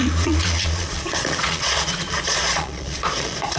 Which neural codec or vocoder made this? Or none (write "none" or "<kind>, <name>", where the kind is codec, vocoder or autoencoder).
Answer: vocoder, Vocos